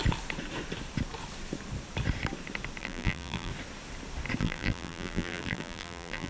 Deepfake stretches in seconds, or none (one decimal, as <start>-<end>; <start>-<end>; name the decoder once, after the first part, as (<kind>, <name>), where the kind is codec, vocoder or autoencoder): 2.8-3.5 (vocoder, BigVGAN v2); 4.4-6.3